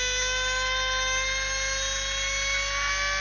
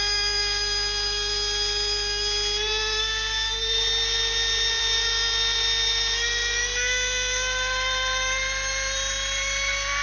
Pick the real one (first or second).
first